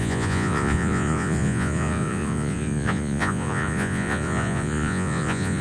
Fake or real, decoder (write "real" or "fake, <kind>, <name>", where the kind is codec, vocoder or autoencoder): fake, vocoder, Vocos